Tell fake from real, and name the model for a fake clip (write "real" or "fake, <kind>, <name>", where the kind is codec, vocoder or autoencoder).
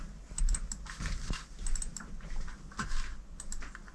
real